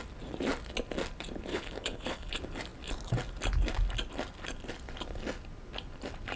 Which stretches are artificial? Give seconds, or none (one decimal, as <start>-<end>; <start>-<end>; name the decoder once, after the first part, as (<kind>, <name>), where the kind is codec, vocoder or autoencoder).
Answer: 1.5-2.3 (codec, HILCodec)